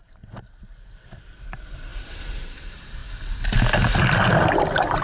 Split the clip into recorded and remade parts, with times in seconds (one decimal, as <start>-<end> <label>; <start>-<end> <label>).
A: 0.0-3.0 remade; 3.0-4.3 recorded; 4.3-5.0 remade